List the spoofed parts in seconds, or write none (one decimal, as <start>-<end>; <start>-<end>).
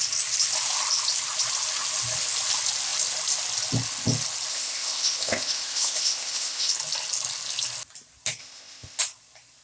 4.5-6.7; 8.4-9.0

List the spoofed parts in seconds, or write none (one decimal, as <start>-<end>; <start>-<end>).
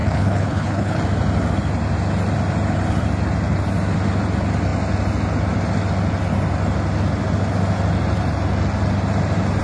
0.0-1.0